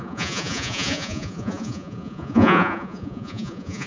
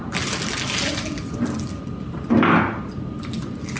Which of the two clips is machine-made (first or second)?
first